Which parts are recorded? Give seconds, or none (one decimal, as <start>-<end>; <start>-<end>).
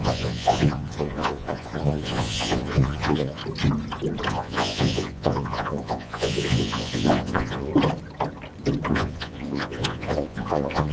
3.4-4.3; 7.7-8.9